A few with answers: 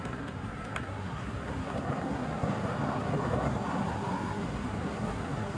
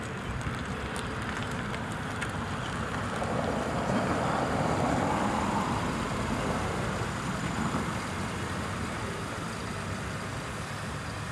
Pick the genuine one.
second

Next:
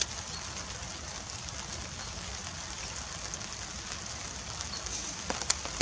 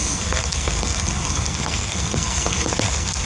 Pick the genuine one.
first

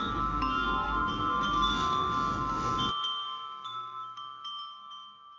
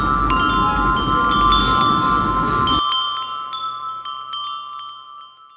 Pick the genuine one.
second